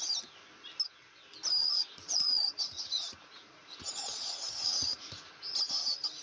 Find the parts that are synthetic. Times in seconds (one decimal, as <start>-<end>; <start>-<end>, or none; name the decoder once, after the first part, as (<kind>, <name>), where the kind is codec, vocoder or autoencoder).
1.6-5.3 (vocoder, Vocos)